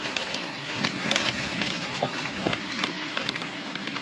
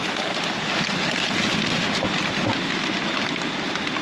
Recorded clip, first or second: second